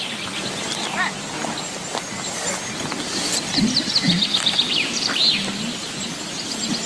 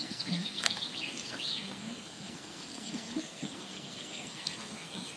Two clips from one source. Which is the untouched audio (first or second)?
first